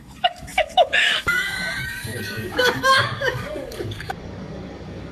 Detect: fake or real fake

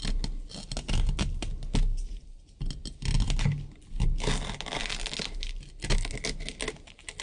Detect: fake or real real